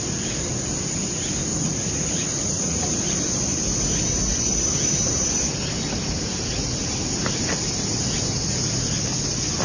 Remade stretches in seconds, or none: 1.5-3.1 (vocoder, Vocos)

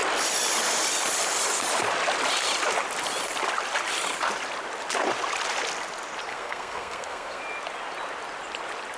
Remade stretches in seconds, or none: 6.3-7.4 (codec, SNAC)

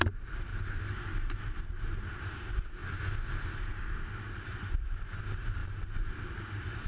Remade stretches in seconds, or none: 0.0-0.5 (vocoder, BigVGAN v2); 1.4-2.8; 3.9-6.9

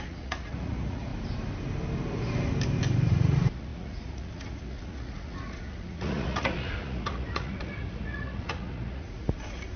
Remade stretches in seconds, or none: 0.0-1.1 (vocoder, Vocos); 3.1-9.8

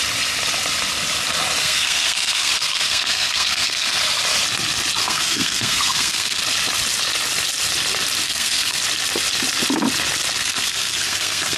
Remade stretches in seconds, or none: 1.6-4.0 (codec, SNAC); 5.0-6.4; 8.2-8.8; 10.4-11.6

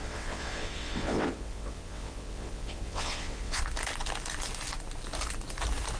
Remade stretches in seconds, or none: 0.0-3.6 (vocoder, WaveNeXt)

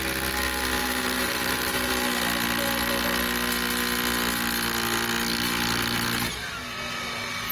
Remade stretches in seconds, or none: 0.8-1.9 (vocoder, BigVGAN v2)

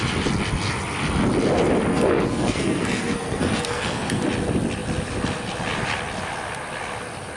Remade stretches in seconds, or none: 1.9-4.2 (codec, SNAC)